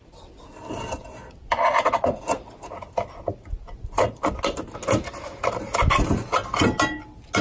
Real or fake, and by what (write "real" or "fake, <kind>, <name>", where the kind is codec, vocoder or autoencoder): real